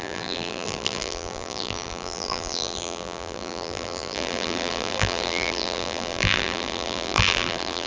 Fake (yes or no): yes